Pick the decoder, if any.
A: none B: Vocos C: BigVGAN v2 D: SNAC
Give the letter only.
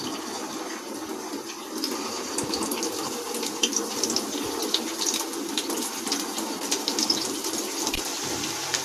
A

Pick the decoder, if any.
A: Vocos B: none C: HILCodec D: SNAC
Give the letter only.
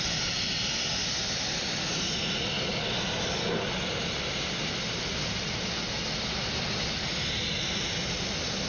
B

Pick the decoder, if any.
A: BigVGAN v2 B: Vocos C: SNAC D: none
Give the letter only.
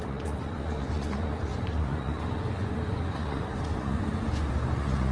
B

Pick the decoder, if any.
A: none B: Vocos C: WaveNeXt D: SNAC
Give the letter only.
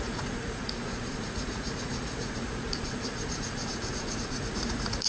B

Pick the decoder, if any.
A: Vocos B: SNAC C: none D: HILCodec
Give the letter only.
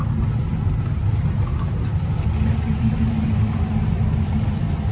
C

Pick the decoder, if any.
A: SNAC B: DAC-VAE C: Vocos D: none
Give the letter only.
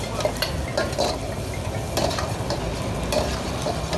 D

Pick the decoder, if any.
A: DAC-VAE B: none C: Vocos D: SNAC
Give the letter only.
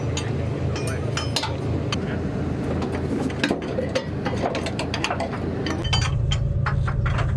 B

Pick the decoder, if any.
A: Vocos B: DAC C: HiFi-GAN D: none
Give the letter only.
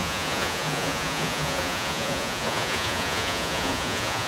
A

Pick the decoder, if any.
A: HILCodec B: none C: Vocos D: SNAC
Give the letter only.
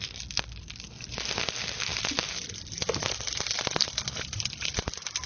B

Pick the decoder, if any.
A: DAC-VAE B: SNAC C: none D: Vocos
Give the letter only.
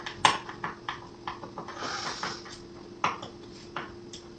C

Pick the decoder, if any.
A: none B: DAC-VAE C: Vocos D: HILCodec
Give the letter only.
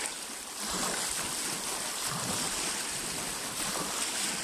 A